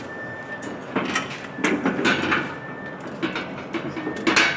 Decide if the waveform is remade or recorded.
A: recorded